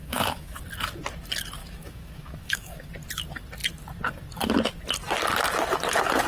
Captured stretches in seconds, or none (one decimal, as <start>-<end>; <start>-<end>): 0.6-1.6; 2.9-6.3